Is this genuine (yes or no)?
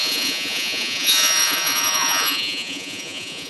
no